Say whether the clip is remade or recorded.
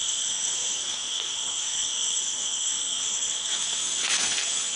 remade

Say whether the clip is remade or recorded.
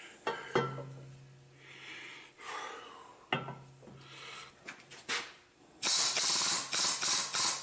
recorded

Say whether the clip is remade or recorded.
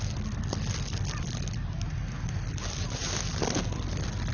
recorded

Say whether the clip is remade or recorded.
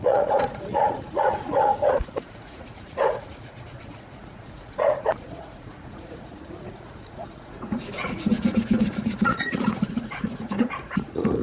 remade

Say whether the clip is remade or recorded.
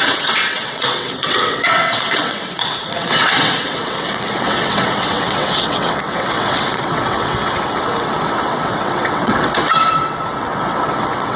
remade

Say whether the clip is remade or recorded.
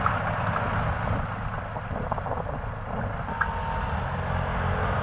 recorded